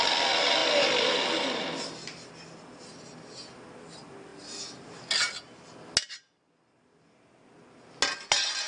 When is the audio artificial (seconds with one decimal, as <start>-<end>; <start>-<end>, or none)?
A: none